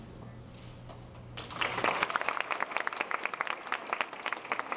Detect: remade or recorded recorded